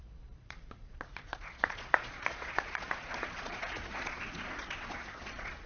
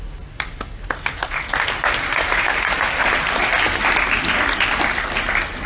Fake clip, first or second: first